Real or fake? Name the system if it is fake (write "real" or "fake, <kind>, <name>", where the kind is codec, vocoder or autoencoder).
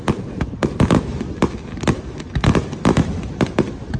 real